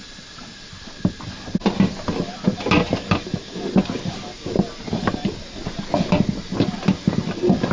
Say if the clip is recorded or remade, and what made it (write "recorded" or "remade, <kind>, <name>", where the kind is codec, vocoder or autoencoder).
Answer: recorded